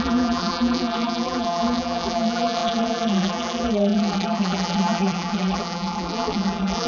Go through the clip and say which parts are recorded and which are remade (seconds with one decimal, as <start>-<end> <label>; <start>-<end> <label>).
0.0-6.9 remade